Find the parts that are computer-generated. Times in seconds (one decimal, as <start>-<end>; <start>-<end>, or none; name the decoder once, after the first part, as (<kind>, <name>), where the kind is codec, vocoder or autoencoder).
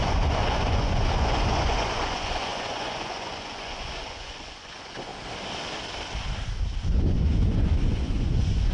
0.0-5.1 (vocoder, Vocos); 6.9-8.7